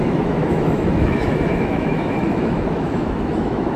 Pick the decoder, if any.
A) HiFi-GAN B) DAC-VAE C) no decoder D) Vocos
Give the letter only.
B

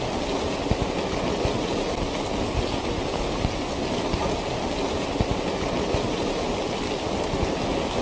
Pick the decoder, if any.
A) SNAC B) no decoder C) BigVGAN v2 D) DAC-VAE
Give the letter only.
B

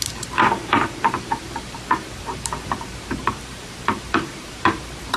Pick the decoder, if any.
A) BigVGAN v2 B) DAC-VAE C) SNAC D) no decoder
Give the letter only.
A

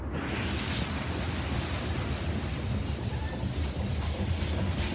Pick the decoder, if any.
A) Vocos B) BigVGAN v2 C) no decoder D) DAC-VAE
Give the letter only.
C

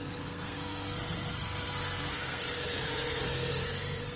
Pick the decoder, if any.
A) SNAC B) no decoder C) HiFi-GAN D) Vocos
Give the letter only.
A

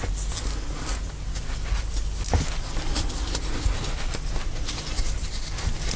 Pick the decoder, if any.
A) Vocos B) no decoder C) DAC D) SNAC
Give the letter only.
B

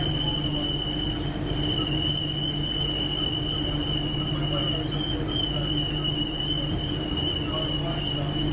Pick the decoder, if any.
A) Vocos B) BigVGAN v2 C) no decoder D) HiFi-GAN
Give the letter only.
C